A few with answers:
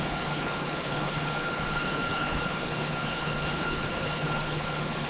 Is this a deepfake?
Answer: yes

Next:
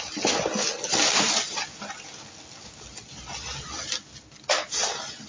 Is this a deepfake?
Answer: no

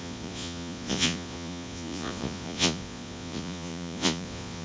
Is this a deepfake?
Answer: yes